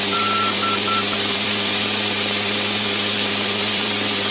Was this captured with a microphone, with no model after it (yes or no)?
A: no